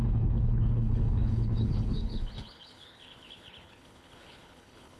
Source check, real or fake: fake